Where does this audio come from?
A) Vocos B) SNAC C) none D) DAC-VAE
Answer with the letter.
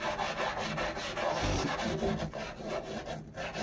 C